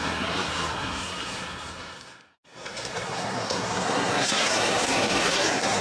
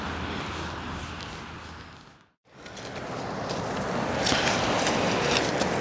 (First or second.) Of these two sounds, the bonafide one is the second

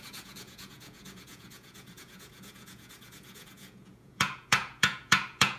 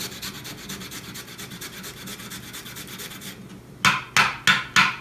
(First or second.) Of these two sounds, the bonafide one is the second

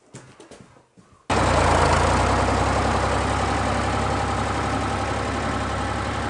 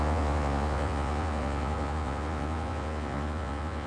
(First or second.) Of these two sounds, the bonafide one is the first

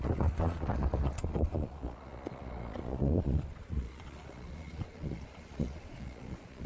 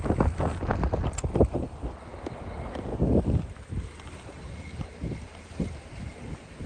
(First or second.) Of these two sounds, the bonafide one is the second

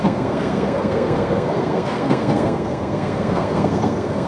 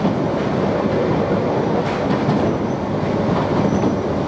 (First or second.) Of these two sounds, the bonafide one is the second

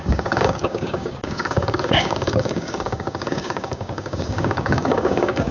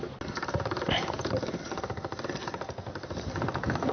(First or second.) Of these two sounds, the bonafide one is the second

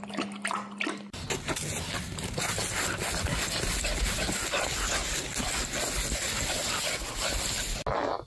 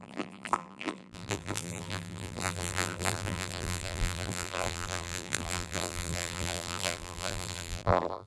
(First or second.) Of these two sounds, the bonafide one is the first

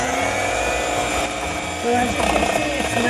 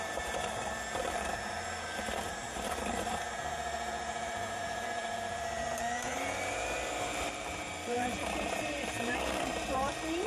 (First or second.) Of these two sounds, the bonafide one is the first